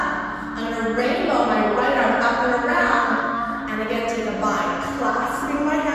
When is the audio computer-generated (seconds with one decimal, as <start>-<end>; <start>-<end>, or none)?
2.8-3.6